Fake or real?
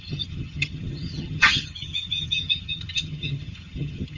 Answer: fake